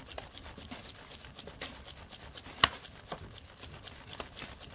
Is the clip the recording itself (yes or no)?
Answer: yes